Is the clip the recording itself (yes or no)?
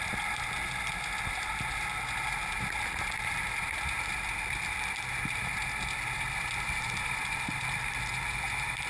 yes